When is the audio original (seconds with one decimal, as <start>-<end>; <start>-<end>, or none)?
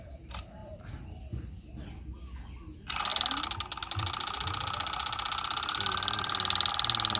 0.0-7.2